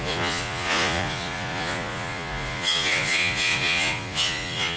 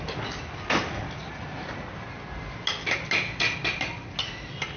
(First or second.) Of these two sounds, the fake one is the first